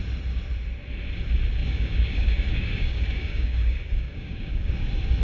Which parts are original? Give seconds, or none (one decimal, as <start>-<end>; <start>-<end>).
0.0-1.6; 4.7-5.2